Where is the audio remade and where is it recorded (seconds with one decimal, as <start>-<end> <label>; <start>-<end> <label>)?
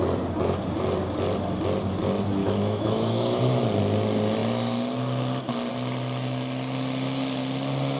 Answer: 0.0-2.4 recorded; 2.4-3.4 remade; 3.4-8.0 recorded